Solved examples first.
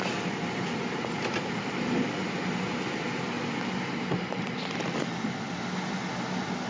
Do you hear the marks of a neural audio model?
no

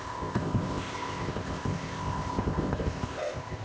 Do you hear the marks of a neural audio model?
yes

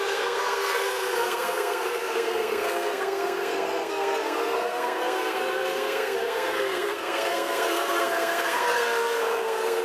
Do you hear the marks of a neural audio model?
yes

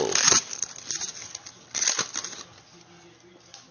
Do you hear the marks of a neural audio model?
no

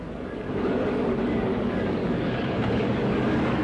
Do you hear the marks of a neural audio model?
yes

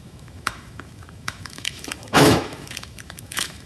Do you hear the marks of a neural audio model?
yes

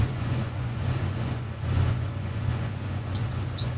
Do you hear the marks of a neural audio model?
yes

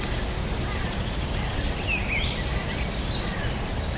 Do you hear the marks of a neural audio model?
no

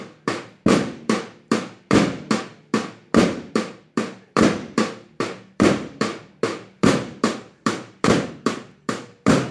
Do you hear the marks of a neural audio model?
yes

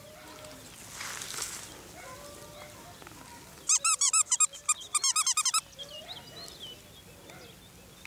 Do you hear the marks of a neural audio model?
no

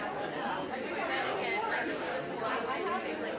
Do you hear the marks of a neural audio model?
no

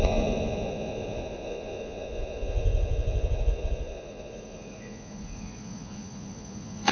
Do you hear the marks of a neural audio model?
yes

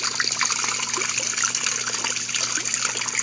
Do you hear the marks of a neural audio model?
no